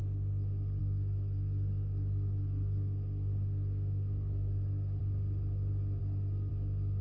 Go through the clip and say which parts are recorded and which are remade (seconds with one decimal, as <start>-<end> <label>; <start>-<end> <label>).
0.0-0.8 recorded; 0.8-5.0 remade; 5.0-6.0 recorded; 6.0-6.5 remade; 6.5-7.0 recorded